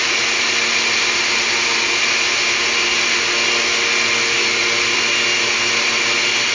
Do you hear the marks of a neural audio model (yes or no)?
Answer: no